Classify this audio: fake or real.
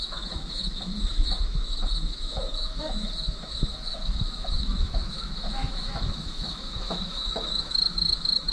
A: fake